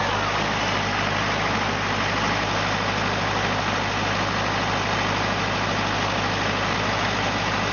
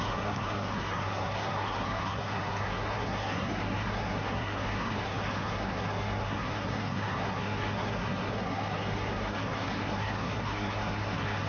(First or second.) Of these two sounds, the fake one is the second